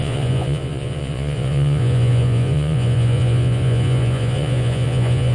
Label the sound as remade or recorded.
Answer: remade